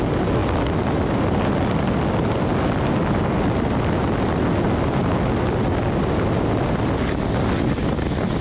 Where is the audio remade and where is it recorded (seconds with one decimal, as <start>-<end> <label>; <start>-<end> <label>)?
0.0-8.4 recorded